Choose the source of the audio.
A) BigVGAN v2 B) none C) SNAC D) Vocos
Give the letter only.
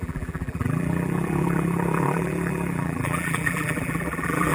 A